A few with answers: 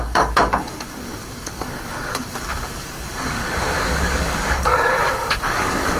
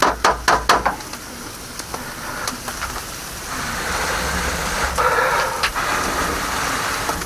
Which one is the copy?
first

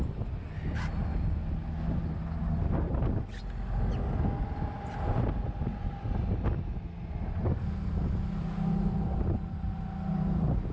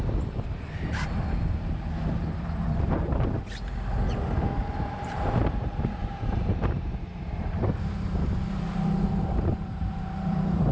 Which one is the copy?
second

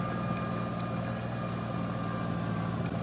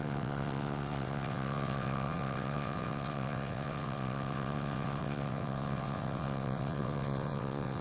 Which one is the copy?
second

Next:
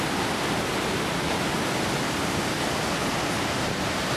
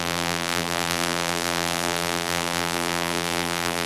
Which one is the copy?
second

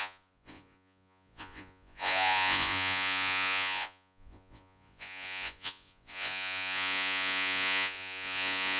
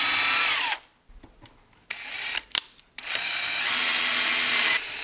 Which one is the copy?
first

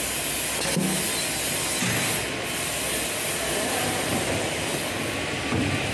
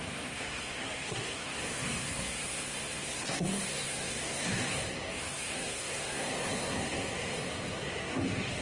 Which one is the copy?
second